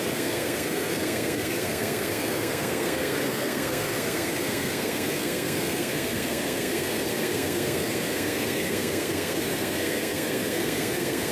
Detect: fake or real fake